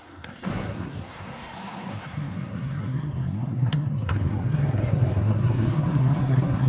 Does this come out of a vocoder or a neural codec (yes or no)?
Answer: yes